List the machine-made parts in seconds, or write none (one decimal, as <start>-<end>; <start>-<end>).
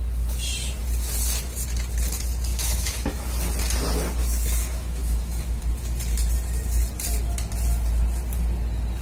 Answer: 2.5-3.3; 4.2-5.6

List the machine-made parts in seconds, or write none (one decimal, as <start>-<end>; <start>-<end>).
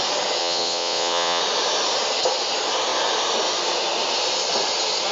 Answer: 0.4-1.4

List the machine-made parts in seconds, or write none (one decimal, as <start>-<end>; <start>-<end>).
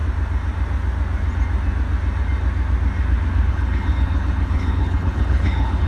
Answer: 3.5-5.9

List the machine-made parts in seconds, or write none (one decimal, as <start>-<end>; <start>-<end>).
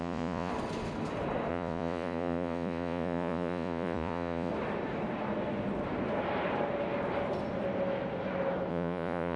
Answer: 0.0-0.5; 1.5-4.5; 8.7-9.4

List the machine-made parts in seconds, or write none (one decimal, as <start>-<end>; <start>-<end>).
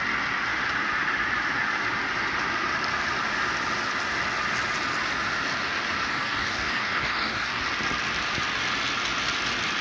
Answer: 6.1-7.6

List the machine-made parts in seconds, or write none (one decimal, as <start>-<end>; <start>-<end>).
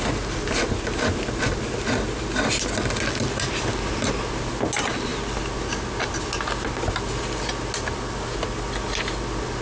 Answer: none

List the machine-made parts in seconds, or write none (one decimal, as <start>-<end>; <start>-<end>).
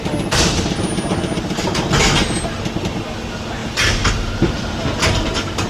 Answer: none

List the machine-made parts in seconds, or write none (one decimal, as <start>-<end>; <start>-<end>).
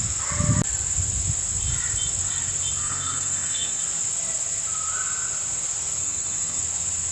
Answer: 2.8-3.8; 6.0-6.6